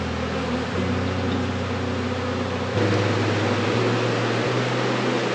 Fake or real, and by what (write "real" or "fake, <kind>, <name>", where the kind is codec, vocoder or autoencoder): real